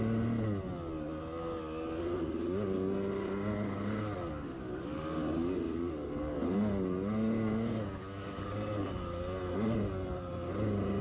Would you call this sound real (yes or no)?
yes